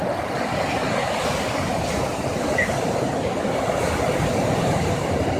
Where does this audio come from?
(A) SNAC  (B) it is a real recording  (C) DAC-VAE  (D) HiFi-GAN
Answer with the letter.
B